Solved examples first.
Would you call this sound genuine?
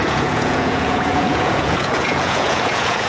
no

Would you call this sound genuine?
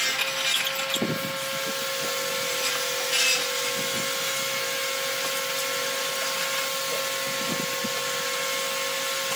yes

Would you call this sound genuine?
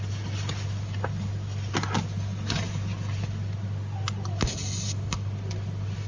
yes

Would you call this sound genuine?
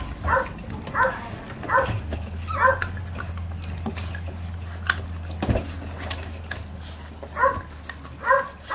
yes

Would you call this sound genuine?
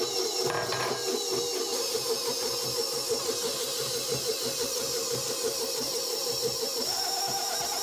yes